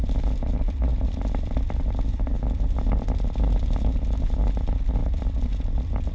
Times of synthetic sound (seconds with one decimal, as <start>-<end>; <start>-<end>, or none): none